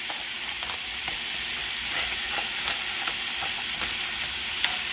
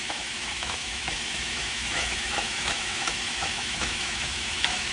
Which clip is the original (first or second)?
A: first